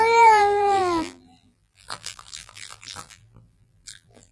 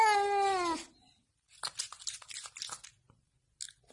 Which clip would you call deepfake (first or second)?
first